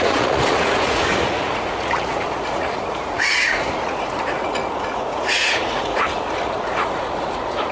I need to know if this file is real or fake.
fake